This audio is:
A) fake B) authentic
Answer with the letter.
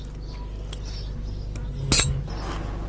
B